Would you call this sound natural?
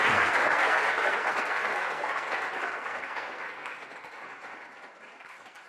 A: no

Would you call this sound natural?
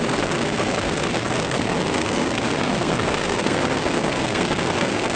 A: no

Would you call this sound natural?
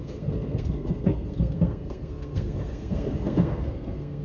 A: no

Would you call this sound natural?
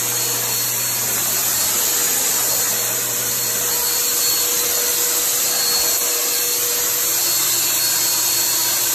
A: yes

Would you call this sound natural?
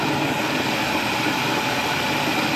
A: yes